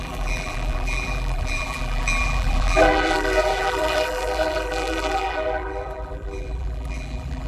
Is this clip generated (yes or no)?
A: yes